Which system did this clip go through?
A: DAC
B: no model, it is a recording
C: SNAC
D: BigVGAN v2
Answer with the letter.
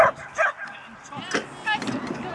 B